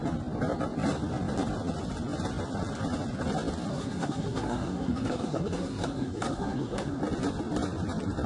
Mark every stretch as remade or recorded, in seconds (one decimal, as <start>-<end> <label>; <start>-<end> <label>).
0.0-3.7 recorded; 3.7-7.0 remade; 7.0-8.3 recorded